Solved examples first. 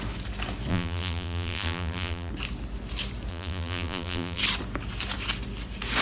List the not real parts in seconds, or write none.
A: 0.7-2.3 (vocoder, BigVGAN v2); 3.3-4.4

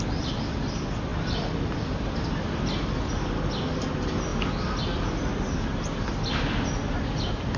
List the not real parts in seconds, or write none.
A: none

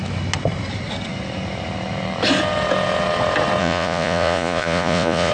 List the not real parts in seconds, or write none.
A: 3.6-5.3 (vocoder, Vocos)

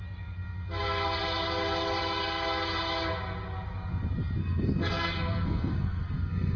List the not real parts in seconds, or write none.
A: 4.4-6.6 (codec, SNAC)